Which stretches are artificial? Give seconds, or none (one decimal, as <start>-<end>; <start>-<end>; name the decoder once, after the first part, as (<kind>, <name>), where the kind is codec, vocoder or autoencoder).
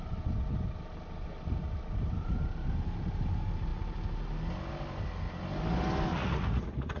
6.1-7.0 (vocoder, Vocos)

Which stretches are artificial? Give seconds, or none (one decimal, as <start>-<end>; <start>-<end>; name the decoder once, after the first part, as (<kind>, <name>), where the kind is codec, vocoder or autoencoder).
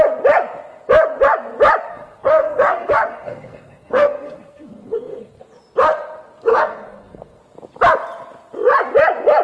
1.9-5.4 (codec, SNAC); 6.5-7.4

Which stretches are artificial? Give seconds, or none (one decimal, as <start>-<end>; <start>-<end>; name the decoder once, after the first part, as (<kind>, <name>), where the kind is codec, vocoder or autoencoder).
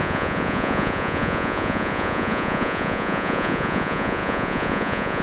0.0-5.2 (vocoder, Vocos)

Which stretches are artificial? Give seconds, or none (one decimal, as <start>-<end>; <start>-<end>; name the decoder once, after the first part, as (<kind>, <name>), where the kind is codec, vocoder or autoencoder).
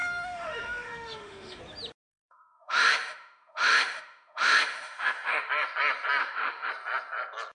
0.0-1.6 (autoencoder, DAC-VAE); 2.1-5.5; 6.2-6.7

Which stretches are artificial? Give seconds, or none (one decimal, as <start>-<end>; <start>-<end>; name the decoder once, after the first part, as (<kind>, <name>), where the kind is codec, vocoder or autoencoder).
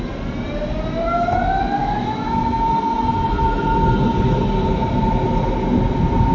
1.8-2.7 (autoencoder, DAC-VAE)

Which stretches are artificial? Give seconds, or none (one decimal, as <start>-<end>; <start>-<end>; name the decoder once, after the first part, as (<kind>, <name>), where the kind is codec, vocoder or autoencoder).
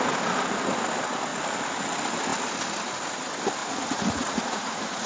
3.6-5.1 (vocoder, Vocos)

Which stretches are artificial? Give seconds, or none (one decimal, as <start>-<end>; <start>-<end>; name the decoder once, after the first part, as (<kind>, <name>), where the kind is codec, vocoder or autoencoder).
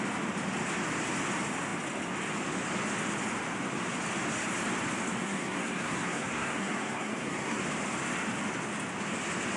5.2-7.6 (codec, SNAC)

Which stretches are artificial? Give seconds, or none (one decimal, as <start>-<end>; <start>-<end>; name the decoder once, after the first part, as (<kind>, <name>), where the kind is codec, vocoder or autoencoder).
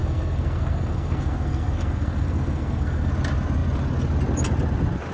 0.0-3.1 (codec, SNAC)